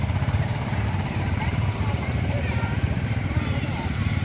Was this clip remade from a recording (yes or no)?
yes